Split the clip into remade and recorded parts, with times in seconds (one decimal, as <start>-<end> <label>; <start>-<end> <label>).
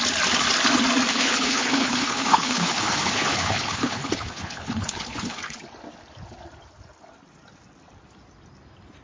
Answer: 0.0-1.1 recorded; 1.1-5.6 remade; 5.6-9.0 recorded